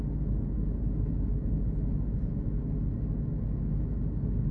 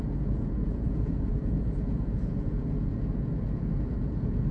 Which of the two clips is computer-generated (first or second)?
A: second